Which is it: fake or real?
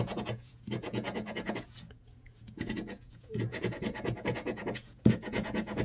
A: fake